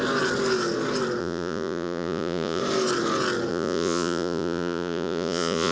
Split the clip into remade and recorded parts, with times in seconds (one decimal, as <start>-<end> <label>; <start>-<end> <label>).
0.0-1.2 recorded; 1.2-2.6 remade; 2.6-3.5 recorded; 3.5-5.7 remade